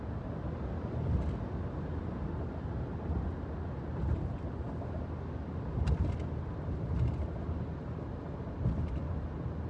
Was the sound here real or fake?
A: real